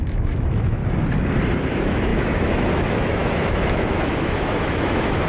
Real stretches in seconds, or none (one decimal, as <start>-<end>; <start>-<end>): 0.8-1.7